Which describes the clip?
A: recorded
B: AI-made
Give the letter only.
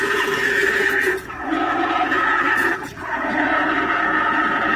B